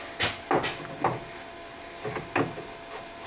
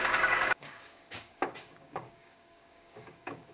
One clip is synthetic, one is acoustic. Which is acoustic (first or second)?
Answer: first